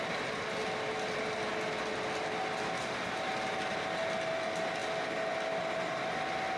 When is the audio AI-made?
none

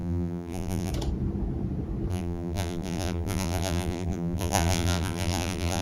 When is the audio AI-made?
0.0-0.9 (vocoder, BigVGAN v2); 2.1-5.8

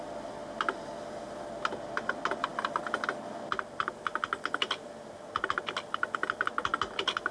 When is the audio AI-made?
none

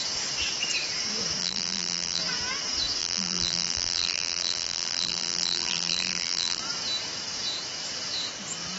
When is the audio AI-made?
1.4-2.2 (vocoder, BigVGAN v2); 3.0-6.6

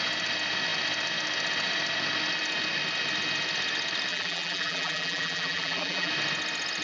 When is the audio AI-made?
4.1-6.1 (vocoder, BigVGAN v2)

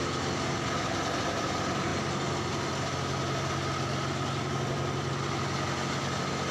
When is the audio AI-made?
none

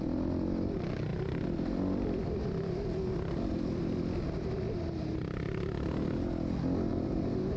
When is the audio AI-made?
6.9-7.6 (vocoder, BigVGAN v2)